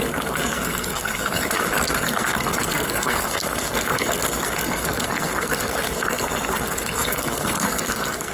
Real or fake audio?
fake